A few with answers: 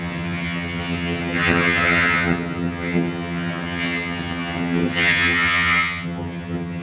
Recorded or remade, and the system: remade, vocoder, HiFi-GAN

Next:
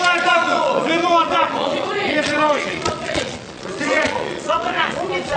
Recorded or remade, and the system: remade, vocoder, Vocos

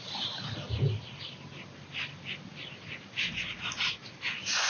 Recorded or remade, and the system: recorded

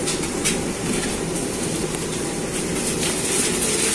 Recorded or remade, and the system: recorded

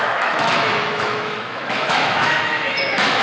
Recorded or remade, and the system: remade, autoencoder, DAC-VAE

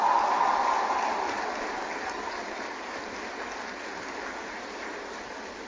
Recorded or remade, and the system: recorded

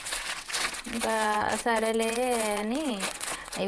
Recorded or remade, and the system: remade, vocoder, WaveNeXt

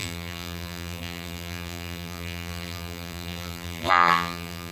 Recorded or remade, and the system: remade, vocoder, BigVGAN v2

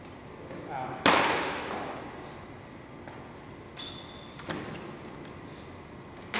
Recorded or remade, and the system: recorded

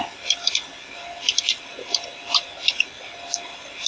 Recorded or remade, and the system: recorded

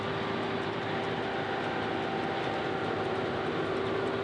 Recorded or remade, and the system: recorded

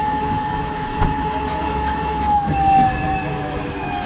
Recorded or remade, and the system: remade, autoencoder, DAC-VAE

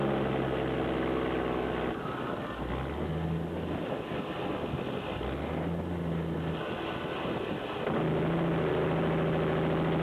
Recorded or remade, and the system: recorded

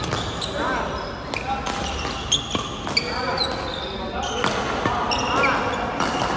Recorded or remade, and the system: recorded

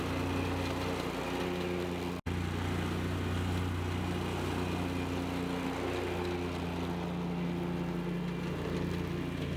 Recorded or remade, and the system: recorded